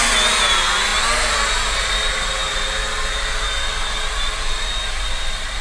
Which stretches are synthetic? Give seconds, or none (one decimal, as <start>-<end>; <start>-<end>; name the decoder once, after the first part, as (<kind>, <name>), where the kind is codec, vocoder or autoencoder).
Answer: none